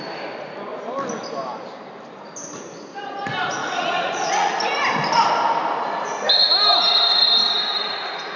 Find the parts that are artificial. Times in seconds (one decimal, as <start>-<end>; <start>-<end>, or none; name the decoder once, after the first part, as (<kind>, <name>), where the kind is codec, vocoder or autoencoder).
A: 3.6-4.5 (vocoder, Vocos); 7.7-8.4

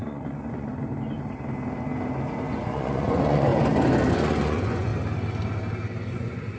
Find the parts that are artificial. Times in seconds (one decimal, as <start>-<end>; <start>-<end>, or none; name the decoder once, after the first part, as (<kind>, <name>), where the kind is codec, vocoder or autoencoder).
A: 0.0-0.7 (vocoder, Vocos); 2.6-3.5; 4.1-4.9; 6.1-6.6

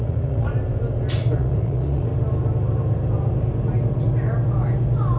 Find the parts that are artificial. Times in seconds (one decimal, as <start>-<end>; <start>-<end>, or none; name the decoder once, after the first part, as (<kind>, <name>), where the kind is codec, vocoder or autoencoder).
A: 0.0-0.5 (vocoder, Vocos); 1.1-2.1